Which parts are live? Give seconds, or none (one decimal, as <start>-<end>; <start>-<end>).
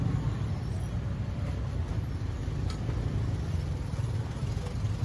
0.0-5.0